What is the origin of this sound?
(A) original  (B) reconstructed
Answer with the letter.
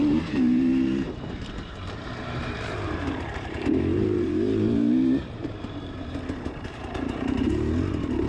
B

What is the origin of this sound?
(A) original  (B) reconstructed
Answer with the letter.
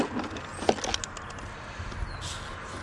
A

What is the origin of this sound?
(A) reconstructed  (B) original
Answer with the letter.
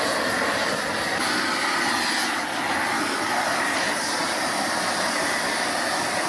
B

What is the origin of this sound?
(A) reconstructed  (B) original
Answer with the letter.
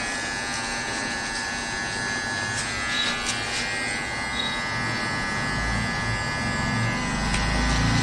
B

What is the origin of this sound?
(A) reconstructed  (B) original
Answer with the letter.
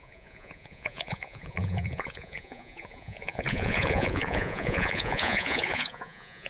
A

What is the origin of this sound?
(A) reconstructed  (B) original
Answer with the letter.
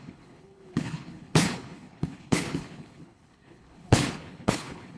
A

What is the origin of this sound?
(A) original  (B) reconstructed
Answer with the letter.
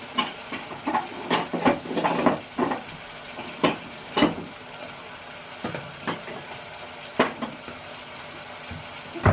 A